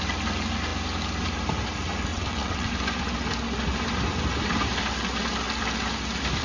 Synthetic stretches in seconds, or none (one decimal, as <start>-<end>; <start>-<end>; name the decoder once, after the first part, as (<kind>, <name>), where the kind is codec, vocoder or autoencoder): 2.1-2.7 (vocoder, WaveNeXt)